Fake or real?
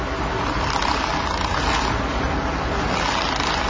real